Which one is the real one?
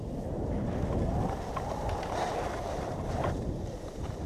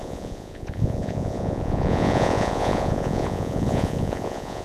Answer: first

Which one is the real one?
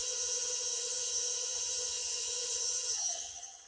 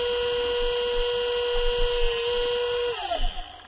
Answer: second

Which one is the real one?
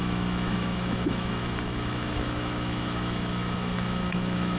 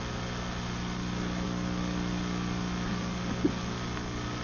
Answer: second